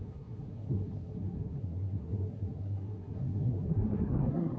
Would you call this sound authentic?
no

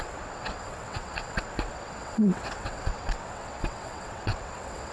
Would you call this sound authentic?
no